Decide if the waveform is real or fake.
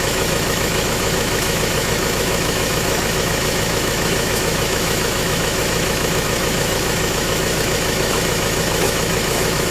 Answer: fake